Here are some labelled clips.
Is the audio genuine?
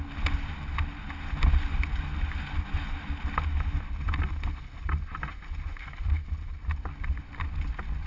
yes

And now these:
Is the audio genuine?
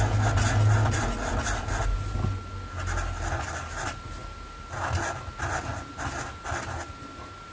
yes